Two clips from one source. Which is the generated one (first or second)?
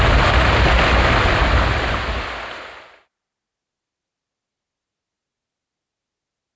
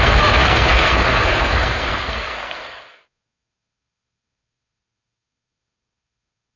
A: second